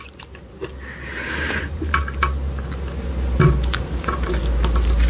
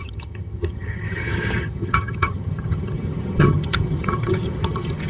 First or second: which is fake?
second